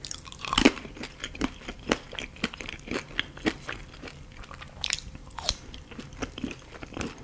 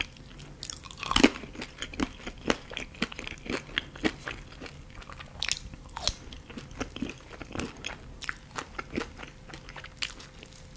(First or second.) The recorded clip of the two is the second